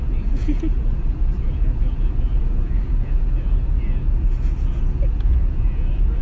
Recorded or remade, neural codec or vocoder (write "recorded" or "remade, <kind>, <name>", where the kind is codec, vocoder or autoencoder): remade, vocoder, Vocos